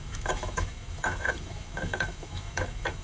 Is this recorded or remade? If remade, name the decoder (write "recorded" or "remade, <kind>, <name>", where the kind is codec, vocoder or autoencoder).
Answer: remade, autoencoder, DAC-VAE